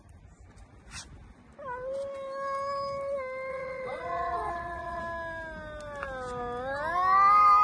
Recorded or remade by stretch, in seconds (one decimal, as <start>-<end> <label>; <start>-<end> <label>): 0.0-3.5 recorded; 3.5-5.0 remade; 5.0-7.6 recorded

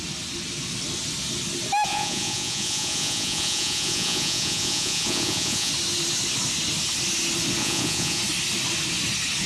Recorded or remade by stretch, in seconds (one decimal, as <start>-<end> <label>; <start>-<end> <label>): 0.0-1.9 recorded; 1.9-5.7 remade; 5.7-7.6 recorded; 7.6-8.2 remade; 8.2-9.5 recorded

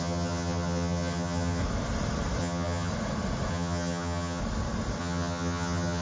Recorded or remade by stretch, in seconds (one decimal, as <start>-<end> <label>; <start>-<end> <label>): 0.0-1.6 remade; 1.6-2.4 recorded; 2.4-2.9 remade; 2.9-3.5 recorded; 3.5-4.4 remade; 4.4-5.0 recorded; 5.0-6.0 remade